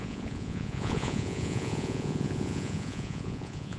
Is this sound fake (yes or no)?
yes